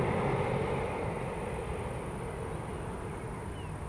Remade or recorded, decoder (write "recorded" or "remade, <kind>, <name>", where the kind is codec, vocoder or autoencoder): recorded